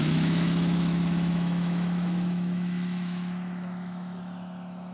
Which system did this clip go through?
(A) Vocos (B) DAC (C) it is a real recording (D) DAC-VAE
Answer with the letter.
D